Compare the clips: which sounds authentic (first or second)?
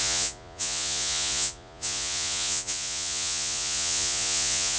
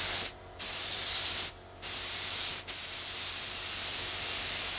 second